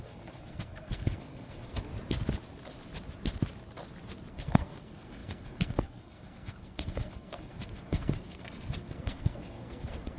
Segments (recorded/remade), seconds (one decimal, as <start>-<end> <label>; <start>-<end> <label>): 0.0-1.9 remade; 1.9-4.3 recorded; 4.3-10.2 remade